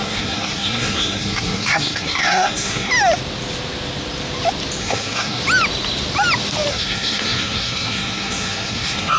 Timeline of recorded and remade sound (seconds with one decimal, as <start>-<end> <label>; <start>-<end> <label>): 0.0-2.9 remade; 2.9-4.8 recorded; 4.8-5.4 remade; 5.4-6.7 recorded; 6.7-9.2 remade